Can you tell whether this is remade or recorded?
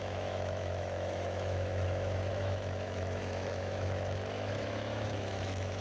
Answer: remade